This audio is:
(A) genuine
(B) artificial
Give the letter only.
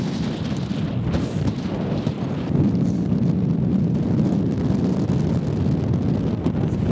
A